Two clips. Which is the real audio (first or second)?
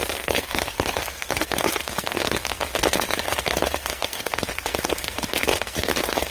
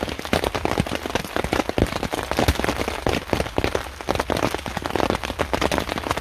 second